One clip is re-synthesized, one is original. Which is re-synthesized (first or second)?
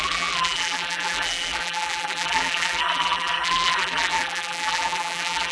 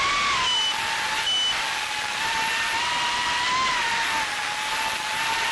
first